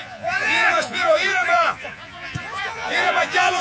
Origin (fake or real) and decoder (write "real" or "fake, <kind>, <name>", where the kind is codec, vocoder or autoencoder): fake, vocoder, Vocos